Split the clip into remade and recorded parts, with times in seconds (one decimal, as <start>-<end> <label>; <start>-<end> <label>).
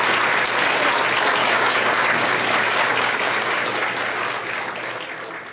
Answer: 0.0-1.4 recorded; 1.4-4.7 remade; 4.7-5.5 recorded